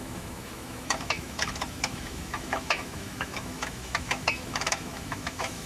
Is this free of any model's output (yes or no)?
no